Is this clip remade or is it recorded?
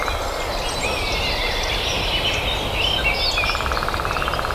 recorded